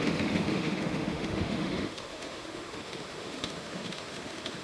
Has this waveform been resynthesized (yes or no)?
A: yes